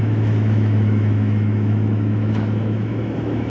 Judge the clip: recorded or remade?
remade